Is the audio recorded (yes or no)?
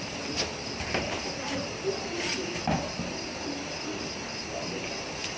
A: yes